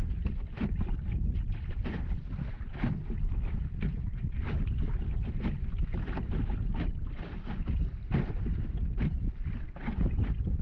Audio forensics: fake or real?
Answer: fake